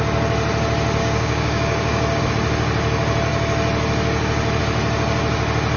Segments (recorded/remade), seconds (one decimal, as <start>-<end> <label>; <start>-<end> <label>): 0.0-1.0 recorded; 1.0-2.2 remade; 2.2-5.8 recorded